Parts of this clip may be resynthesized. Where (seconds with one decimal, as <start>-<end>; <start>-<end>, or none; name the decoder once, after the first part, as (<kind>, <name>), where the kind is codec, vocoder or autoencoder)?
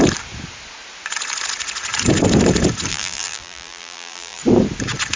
2.9-4.4 (vocoder, BigVGAN v2)